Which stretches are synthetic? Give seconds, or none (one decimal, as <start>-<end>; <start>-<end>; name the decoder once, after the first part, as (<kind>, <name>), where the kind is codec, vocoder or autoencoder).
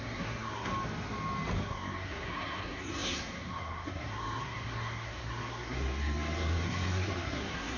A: 0.0-0.7 (codec, SNAC); 1.6-7.8